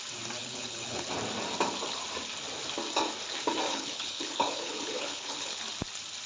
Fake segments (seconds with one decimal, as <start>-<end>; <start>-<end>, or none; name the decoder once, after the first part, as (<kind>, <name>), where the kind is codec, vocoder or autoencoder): 0.4-1.1 (codec, HILCodec); 3.7-5.6

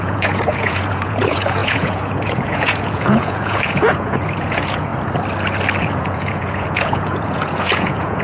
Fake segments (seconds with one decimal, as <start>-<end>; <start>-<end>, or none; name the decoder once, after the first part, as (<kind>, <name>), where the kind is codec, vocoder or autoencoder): 0.0-4.9 (vocoder, Vocos); 5.8-8.2

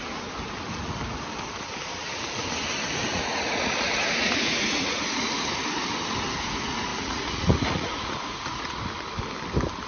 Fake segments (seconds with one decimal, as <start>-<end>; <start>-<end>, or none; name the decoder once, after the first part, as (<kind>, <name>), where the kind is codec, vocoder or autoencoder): 3.1-5.2 (vocoder, Vocos); 6.9-8.8